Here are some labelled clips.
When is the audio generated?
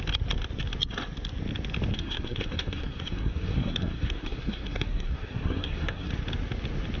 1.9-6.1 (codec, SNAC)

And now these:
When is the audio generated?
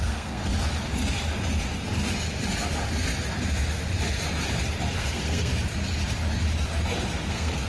0.0-0.4 (codec, SNAC); 5.0-5.5; 7.3-7.7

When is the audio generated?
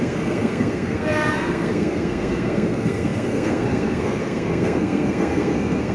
0.0-5.9 (codec, SNAC)